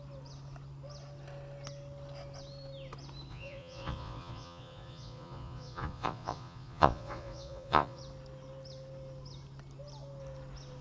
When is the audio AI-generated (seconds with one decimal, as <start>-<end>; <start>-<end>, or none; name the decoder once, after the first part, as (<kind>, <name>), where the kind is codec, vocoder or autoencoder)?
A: 3.3-8.0 (vocoder, Vocos)